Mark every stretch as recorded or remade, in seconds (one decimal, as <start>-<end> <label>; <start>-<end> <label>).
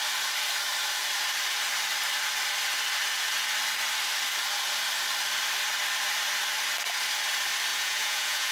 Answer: 0.0-7.7 recorded; 7.7-8.5 remade